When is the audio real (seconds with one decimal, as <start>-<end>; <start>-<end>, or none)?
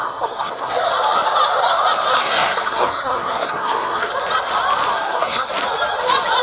0.9-2.1; 4.1-4.9; 5.5-6.4